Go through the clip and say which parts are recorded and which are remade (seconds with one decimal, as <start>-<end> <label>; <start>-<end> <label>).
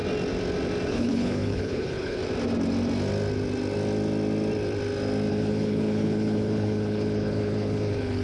0.0-0.9 recorded; 0.9-2.2 remade; 2.2-5.3 recorded; 5.3-8.2 remade